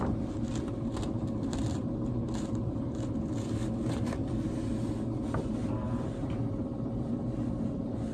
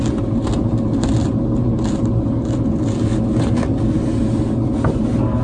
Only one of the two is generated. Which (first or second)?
first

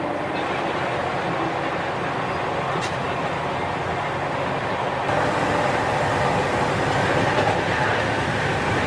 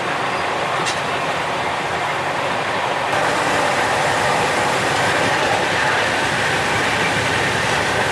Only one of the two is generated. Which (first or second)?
second